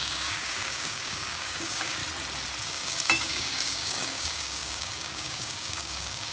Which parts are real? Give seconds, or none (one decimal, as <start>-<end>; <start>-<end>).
2.0-2.6